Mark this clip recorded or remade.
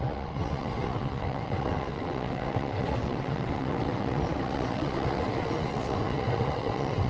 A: remade